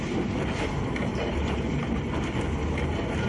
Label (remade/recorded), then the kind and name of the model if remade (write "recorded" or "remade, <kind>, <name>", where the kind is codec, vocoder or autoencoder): recorded